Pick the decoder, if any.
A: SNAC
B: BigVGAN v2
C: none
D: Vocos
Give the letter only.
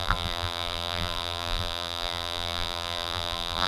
B